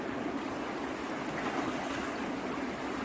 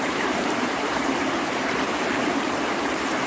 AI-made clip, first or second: second